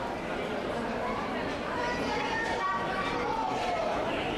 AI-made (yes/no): yes